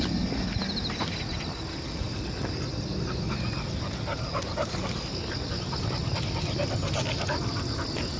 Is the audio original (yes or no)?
yes